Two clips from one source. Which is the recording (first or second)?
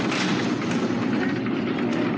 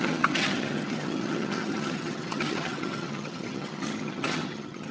first